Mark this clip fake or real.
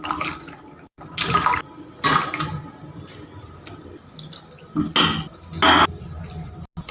real